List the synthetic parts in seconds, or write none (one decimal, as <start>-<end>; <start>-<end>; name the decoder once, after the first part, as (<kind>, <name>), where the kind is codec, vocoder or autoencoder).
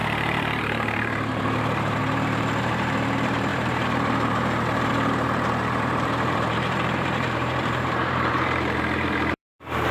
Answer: 0.0-9.9 (vocoder, BigVGAN v2)